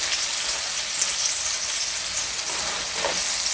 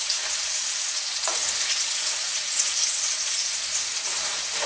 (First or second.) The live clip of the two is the first